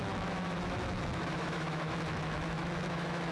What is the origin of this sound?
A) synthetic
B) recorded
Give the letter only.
A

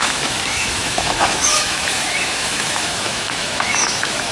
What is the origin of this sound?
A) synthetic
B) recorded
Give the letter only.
A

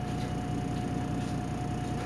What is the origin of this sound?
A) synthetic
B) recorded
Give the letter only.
B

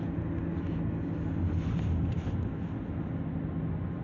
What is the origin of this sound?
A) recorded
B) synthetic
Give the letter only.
A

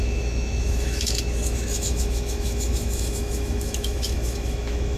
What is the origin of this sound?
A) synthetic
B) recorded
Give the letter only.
A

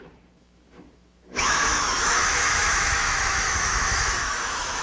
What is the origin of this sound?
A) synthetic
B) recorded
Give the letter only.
A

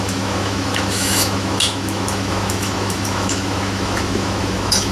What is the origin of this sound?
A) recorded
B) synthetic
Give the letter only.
B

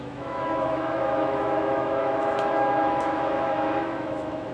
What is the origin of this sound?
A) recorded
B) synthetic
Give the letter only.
B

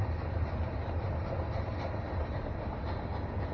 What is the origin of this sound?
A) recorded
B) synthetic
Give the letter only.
A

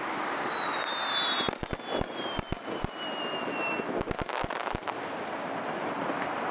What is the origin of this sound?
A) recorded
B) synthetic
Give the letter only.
A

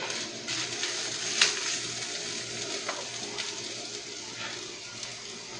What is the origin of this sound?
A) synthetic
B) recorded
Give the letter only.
B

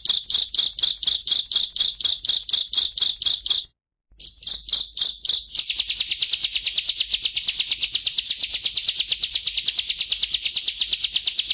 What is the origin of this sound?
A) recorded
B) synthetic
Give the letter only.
A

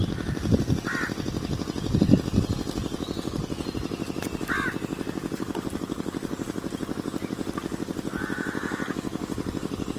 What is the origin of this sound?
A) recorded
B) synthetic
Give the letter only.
A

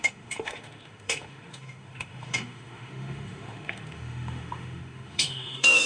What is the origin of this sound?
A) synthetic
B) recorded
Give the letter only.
A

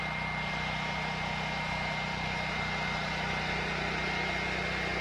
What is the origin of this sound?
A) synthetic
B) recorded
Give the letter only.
B